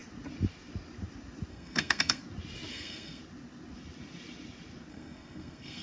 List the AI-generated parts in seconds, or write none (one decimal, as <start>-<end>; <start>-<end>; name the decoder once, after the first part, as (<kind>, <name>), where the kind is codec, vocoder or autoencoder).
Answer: 1.5-2.2 (codec, SNAC); 2.7-3.2; 4.9-5.8